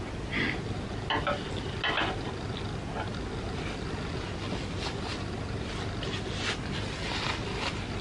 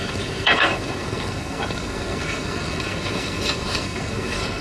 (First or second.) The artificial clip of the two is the second